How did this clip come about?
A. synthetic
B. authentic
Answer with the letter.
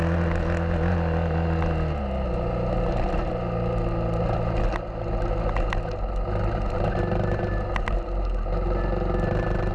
B